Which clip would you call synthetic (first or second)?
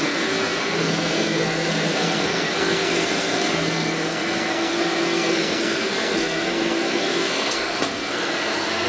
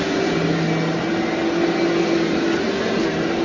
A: first